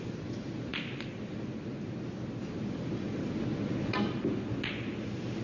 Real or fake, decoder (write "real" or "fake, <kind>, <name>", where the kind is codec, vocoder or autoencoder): real